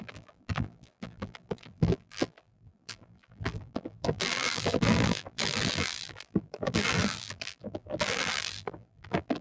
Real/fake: fake